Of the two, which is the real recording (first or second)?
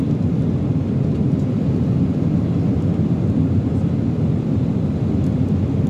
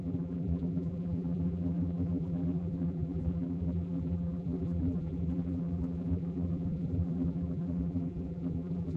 first